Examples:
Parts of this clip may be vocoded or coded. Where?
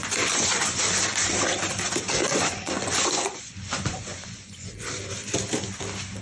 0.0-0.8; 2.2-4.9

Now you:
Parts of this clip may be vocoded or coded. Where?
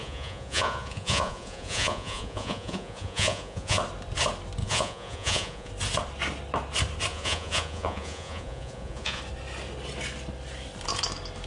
0.0-3.8; 4.6-5.7; 7.1-9.2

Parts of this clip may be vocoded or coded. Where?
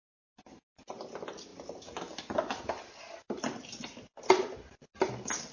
none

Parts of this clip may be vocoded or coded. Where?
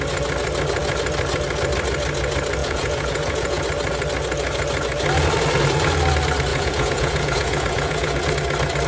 2.6-3.6; 6.5-8.3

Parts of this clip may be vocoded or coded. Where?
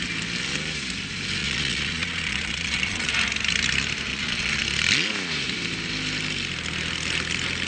1.4-3.1; 4.1-4.6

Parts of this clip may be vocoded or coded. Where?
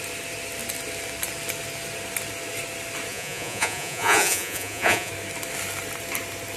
3.1-5.1